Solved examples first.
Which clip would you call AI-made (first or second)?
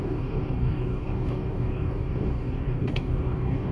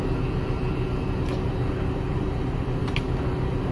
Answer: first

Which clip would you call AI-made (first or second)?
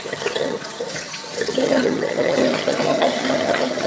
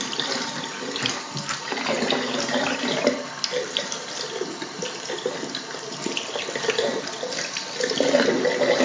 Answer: first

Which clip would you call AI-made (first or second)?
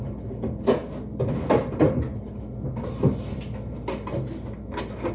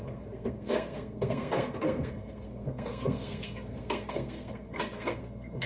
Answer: second